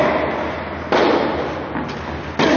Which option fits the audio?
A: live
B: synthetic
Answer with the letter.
A